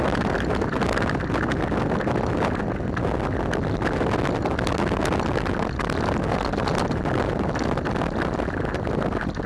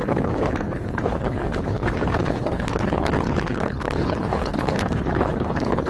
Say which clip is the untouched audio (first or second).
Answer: first